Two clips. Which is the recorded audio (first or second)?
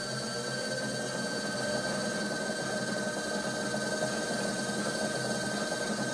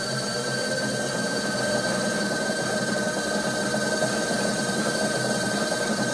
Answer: first